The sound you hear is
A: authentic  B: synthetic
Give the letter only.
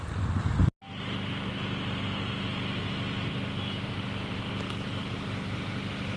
A